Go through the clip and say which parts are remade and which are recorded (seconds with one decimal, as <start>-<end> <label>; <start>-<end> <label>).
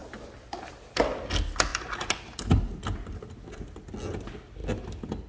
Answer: 0.0-0.7 remade; 0.7-5.3 recorded